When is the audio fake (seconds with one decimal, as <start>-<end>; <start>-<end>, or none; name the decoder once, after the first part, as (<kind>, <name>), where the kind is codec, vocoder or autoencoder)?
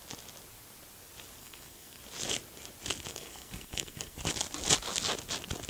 1.4-2.0 (codec, SNAC); 3.1-4.2